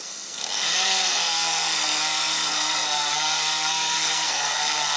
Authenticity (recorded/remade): remade